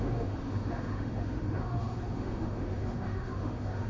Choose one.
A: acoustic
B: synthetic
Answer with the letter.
B